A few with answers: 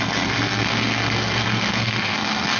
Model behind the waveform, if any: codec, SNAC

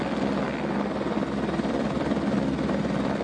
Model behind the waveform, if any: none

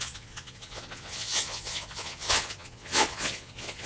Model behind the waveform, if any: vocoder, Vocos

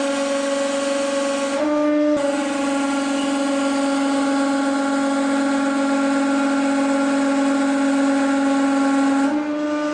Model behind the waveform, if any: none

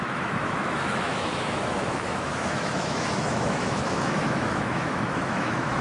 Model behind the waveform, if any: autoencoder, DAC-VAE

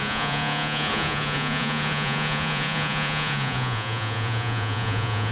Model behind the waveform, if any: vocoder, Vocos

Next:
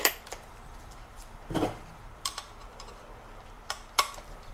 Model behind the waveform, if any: vocoder, BigVGAN v2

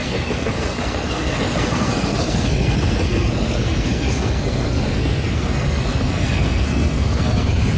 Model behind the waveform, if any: codec, SNAC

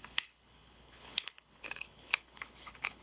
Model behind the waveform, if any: codec, HILCodec